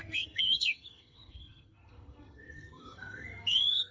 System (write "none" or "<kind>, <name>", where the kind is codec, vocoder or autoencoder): codec, SNAC